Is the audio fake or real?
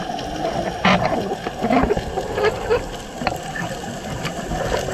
real